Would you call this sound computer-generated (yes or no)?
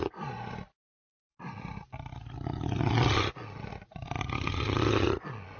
no